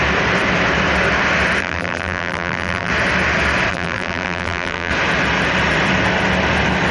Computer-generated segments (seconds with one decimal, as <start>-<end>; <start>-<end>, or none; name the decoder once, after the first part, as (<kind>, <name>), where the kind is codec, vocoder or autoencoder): 1.6-2.9 (vocoder, BigVGAN v2); 3.7-4.9